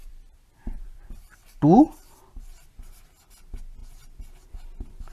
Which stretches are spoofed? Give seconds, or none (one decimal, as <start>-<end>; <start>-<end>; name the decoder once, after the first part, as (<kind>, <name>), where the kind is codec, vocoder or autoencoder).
0.0-3.1 (vocoder, BigVGAN v2)